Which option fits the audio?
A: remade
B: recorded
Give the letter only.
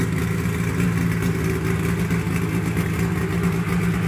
B